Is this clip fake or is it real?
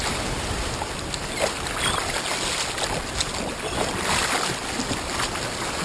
real